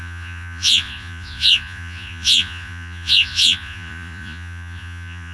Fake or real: fake